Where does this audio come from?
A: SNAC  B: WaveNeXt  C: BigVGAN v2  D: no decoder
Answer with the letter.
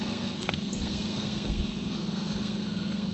A